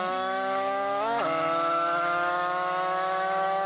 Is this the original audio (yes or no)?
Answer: no